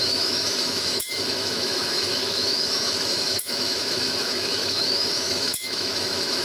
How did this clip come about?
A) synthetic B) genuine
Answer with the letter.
A